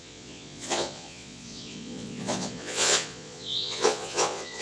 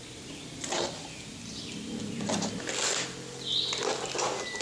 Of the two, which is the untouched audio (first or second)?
second